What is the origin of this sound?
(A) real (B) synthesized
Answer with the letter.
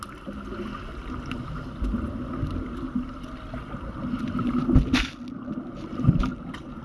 A